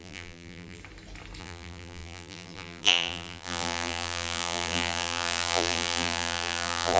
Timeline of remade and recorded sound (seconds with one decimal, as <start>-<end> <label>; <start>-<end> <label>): 0.0-0.8 remade; 0.8-1.4 recorded; 1.4-7.0 remade